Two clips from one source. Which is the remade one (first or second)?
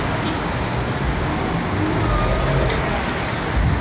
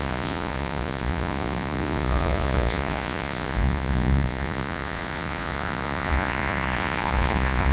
second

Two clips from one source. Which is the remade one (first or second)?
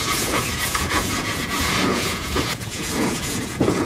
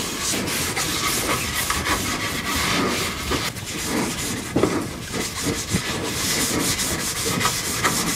first